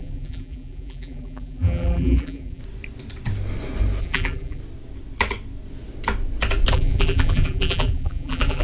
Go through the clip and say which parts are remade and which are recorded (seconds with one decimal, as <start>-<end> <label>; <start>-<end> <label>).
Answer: 0.0-2.6 remade; 2.6-4.0 recorded; 4.0-4.6 remade; 4.6-6.7 recorded; 6.7-8.6 remade